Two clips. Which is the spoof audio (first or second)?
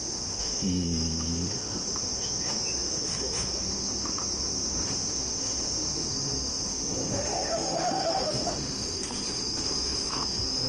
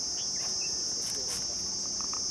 first